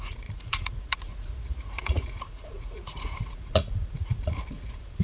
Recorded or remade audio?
remade